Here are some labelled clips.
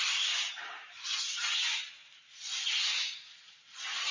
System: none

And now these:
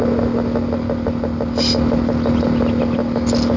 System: none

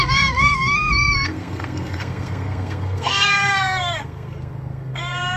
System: codec, SNAC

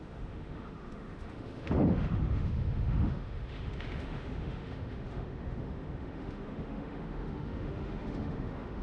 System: autoencoder, DAC-VAE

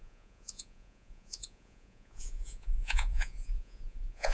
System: vocoder, Vocos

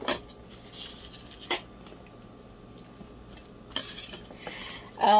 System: none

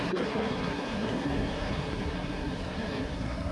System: codec, SNAC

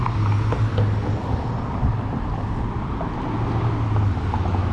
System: none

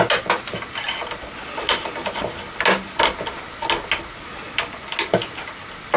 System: none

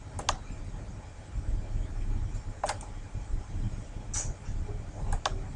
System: none